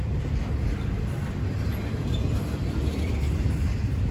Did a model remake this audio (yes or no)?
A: no